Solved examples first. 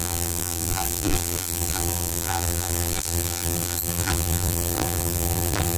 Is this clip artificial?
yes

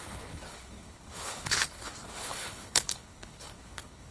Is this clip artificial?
yes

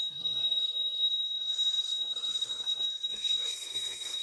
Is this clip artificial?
yes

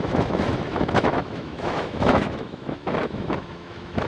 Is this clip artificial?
yes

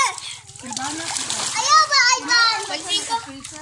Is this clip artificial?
no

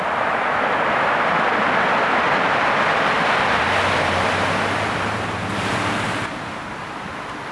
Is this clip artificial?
yes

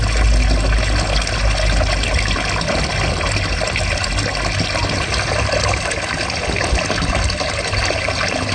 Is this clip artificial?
no